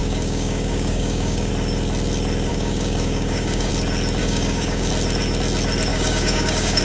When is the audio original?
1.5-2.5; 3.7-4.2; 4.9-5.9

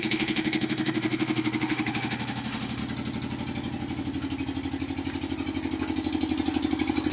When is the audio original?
2.8-7.1

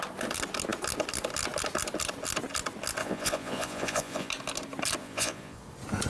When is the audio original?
0.0-3.0; 4.3-5.0; 5.6-6.1

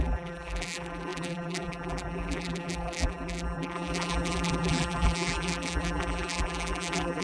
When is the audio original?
none